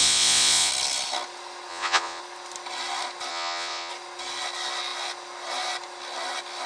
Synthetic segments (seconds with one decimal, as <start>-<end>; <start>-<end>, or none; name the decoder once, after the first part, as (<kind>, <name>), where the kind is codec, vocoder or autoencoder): 0.0-0.7 (vocoder, Vocos); 1.7-2.2; 3.3-3.9